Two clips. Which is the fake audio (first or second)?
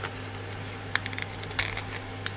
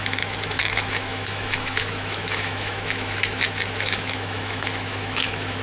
second